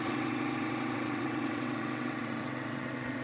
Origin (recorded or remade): remade